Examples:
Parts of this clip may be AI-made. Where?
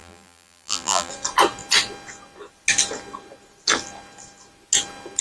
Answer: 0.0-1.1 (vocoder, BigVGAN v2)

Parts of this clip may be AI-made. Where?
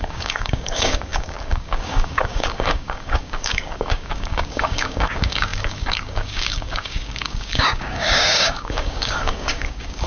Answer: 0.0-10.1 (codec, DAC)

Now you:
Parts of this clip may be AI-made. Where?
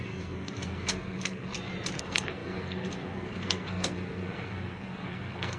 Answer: 0.0-1.5 (codec, SNAC); 2.0-5.6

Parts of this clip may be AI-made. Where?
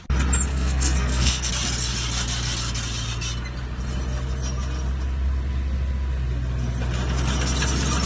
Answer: 0.5-1.5 (codec, SNAC)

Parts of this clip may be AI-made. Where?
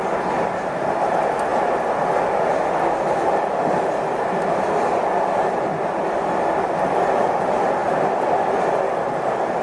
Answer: none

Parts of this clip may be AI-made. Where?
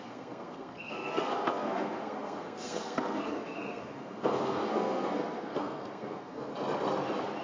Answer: 0.0-6.5 (codec, SNAC)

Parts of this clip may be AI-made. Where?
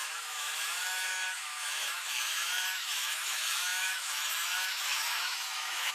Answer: 0.0-5.9 (autoencoder, DAC-VAE)